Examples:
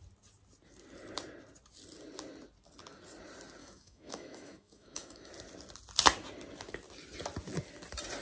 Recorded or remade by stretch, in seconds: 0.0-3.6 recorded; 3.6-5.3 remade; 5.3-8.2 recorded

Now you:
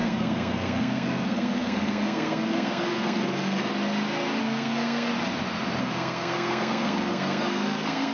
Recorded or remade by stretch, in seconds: 0.0-3.7 remade; 3.7-4.4 recorded; 4.4-5.1 remade; 5.1-5.8 recorded; 5.8-8.1 remade

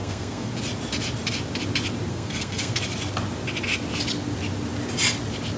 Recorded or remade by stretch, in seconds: 0.0-0.5 remade; 0.5-2.1 recorded; 2.1-2.8 remade; 2.8-5.6 recorded

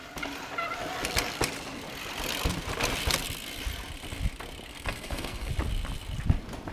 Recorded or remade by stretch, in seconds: 0.0-4.7 recorded; 4.7-5.5 remade; 5.5-6.7 recorded